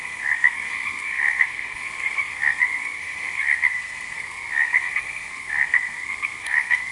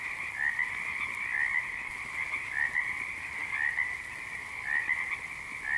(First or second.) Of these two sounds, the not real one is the first